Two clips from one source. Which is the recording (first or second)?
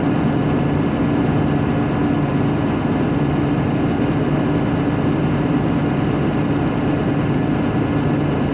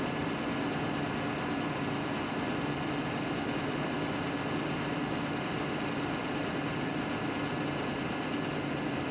first